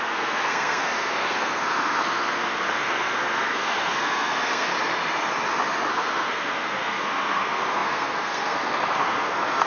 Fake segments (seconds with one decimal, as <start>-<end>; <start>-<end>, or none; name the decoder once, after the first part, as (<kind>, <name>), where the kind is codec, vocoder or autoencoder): 0.0-4.7 (codec, SNAC); 5.9-9.7

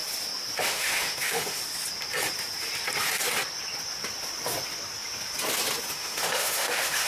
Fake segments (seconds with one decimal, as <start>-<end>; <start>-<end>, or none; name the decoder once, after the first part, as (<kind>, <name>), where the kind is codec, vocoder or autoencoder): 0.6-1.6 (autoencoder, DAC-VAE); 5.9-7.1

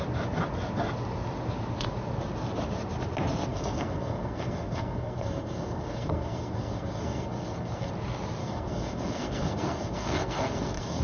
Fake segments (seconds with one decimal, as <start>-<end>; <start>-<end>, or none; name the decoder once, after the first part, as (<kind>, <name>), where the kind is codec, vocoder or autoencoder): 3.5-7.9 (codec, SNAC); 8.4-11.0